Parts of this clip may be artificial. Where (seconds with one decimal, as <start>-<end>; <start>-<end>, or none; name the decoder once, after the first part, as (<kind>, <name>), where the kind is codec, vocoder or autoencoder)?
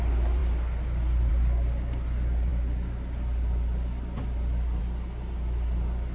none